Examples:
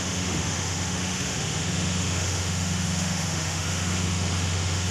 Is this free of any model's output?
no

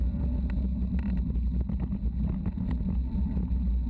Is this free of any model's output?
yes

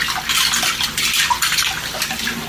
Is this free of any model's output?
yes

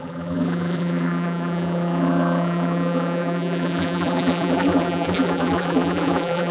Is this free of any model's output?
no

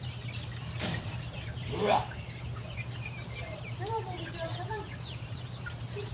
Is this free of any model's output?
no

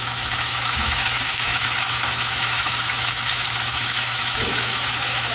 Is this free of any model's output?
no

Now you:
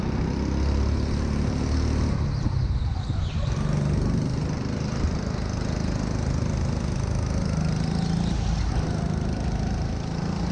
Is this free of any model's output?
yes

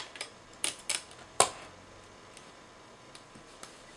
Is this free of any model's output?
yes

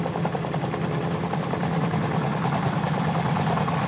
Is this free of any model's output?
no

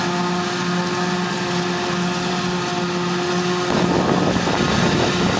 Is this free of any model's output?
yes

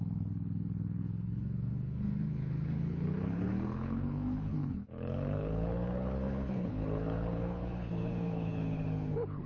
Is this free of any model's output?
no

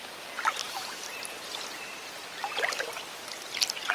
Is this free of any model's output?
yes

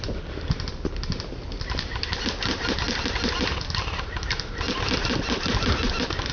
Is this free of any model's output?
yes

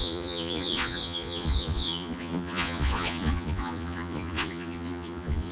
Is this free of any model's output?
no